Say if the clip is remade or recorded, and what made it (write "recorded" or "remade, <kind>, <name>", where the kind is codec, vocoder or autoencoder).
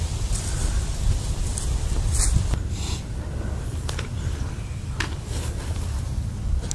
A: recorded